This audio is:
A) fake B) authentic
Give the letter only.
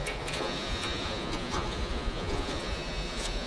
A